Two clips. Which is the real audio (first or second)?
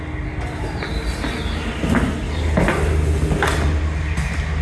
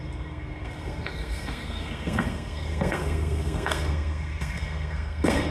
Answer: first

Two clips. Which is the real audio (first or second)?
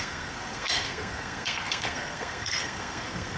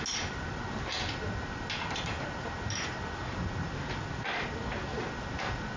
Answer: second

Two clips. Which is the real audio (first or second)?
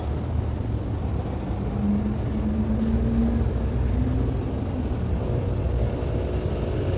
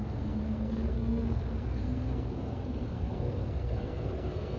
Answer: first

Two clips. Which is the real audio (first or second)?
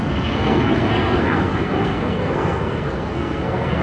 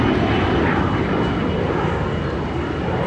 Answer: second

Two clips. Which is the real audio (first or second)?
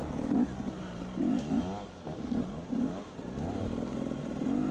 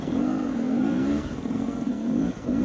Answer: first